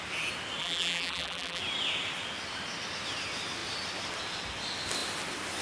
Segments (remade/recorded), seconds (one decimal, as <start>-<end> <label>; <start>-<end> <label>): 0.0-0.6 recorded; 0.6-1.6 remade; 1.6-5.6 recorded